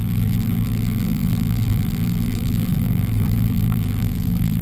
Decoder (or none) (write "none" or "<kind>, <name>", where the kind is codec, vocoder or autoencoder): vocoder, BigVGAN v2